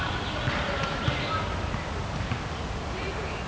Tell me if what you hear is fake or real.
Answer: real